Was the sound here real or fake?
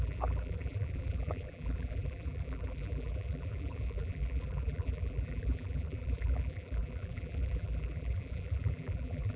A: fake